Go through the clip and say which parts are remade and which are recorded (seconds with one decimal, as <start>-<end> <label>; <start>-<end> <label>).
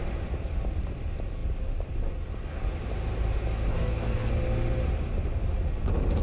0.0-3.7 recorded; 3.7-4.3 remade; 4.3-6.2 recorded